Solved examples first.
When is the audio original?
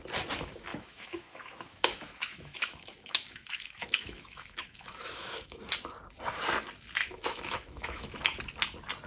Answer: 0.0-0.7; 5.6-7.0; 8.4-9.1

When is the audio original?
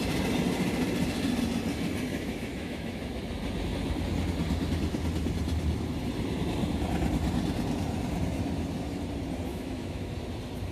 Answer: 0.0-2.1; 3.2-9.5; 10.1-10.7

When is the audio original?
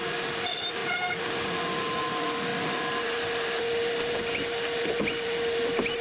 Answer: 0.0-6.0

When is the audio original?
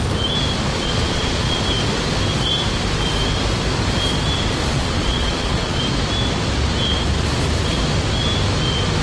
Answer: 0.0-0.7; 1.6-4.7; 5.8-9.0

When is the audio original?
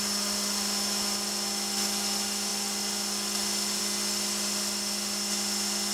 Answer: 0.0-5.9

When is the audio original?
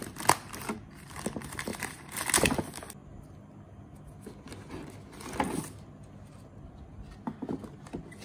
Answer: 0.0-1.7; 2.2-8.2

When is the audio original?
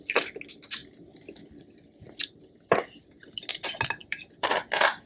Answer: 0.0-4.0; 4.5-5.1